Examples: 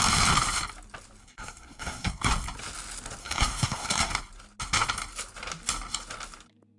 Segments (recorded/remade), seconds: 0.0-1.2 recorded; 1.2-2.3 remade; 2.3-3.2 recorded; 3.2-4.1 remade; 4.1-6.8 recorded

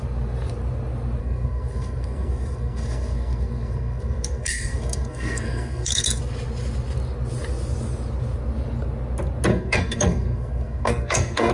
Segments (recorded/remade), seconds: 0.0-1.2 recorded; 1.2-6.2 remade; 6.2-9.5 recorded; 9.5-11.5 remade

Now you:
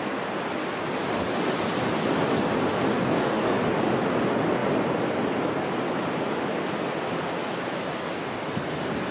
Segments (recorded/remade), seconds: 0.0-2.9 recorded; 2.9-3.5 remade; 3.5-9.1 recorded